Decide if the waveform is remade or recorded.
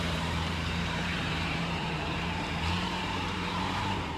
remade